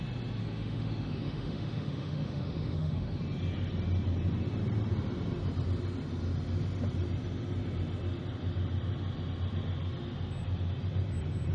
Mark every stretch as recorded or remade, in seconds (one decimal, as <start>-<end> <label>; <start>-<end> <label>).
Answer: 0.0-0.4 recorded; 0.4-3.2 remade; 3.2-11.5 recorded